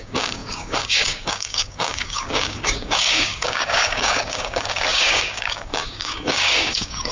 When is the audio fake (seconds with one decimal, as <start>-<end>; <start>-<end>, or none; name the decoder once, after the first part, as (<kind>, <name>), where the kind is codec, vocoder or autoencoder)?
0.0-7.1 (codec, DAC)

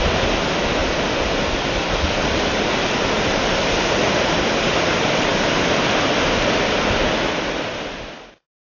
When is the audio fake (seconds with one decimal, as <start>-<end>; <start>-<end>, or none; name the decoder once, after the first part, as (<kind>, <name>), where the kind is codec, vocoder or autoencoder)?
none

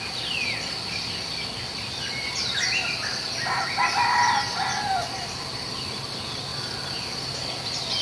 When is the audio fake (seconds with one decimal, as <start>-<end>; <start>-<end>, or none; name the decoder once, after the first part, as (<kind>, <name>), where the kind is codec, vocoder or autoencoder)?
6.5-8.0 (vocoder, BigVGAN v2)